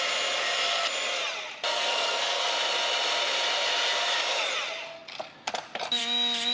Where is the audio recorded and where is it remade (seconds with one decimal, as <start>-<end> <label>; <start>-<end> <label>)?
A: 0.0-1.7 recorded; 1.7-2.5 remade; 2.5-6.5 recorded